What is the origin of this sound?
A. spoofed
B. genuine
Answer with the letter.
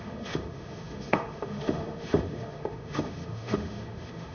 A